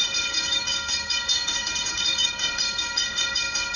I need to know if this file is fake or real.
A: fake